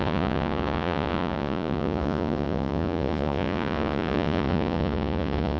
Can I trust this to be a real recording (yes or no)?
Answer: no